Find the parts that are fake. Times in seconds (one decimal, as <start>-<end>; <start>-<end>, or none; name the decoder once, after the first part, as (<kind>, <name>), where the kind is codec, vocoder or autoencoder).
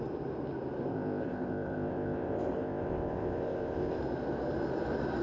0.9-4.0 (codec, ZipCodec)